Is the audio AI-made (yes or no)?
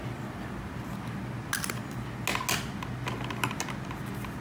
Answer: no